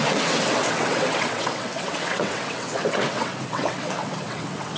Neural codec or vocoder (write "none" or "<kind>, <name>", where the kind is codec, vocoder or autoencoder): vocoder, WaveNeXt